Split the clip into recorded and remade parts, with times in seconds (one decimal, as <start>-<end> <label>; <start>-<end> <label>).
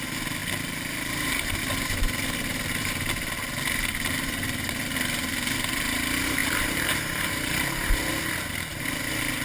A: 0.0-6.4 recorded; 6.4-8.1 remade; 8.1-9.4 recorded